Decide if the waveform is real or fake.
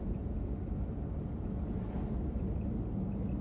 real